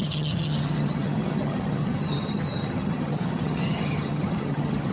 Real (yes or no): no